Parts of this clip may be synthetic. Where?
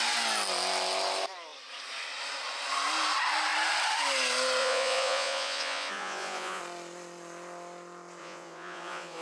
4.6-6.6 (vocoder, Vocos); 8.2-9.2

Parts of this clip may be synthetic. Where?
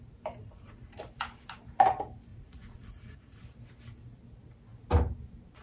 0.4-1.0 (vocoder, Vocos); 2.3-3.4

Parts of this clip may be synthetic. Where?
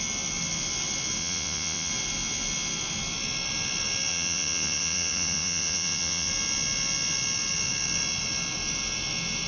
1.2-1.9 (vocoder, Vocos); 4.1-6.3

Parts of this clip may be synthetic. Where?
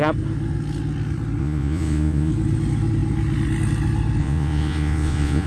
1.4-2.3 (vocoder, Vocos); 4.2-5.5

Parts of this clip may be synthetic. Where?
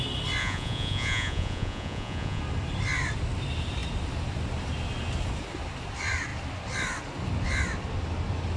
0.4-2.4 (vocoder, Vocos)